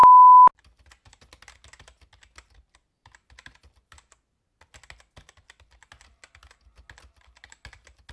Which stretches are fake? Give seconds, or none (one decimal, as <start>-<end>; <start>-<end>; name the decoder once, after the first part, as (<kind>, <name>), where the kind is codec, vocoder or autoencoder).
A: none